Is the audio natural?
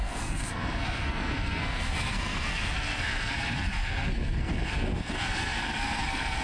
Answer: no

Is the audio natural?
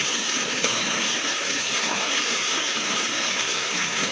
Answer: no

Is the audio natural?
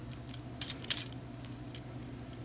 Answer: yes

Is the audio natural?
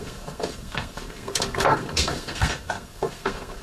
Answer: no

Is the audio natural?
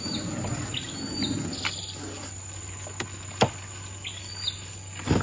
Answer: yes